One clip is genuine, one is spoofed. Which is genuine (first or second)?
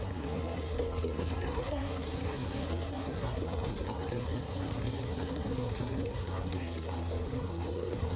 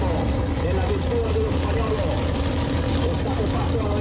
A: second